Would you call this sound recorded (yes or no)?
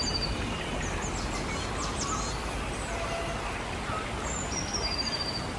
yes